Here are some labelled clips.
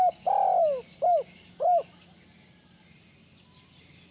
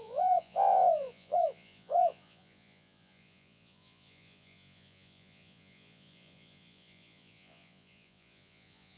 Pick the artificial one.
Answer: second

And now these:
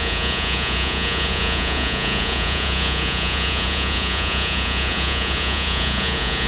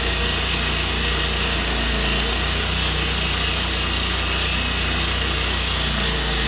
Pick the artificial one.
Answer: first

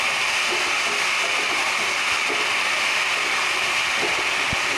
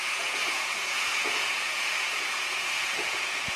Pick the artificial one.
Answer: second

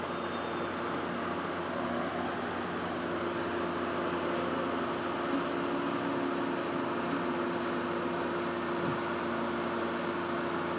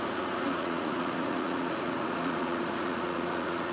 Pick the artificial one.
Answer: second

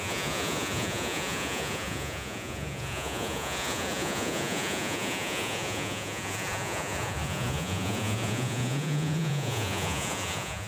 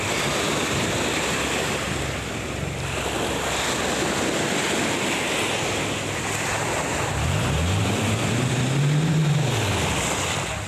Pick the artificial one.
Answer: first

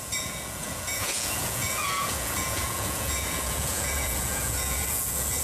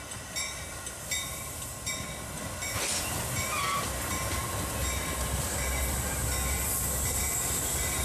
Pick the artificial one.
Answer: first